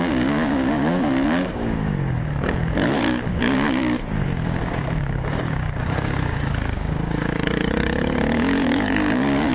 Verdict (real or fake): fake